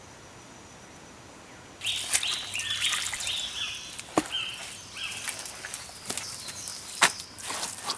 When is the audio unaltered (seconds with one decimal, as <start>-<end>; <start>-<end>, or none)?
0.0-8.0